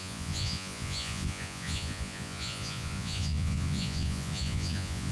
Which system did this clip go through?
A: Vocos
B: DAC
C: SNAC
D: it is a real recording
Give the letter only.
A